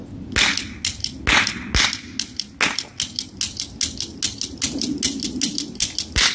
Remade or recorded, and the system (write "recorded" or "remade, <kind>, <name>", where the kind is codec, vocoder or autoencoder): recorded